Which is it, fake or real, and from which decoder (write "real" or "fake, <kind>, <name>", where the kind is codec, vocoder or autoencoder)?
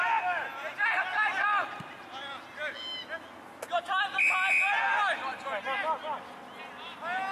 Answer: real